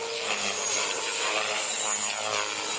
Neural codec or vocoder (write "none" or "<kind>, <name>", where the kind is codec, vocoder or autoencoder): none